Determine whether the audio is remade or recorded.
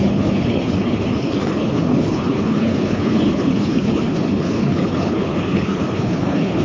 remade